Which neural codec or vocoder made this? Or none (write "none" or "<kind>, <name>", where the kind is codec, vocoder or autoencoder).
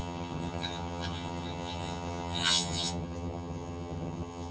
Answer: vocoder, HiFi-GAN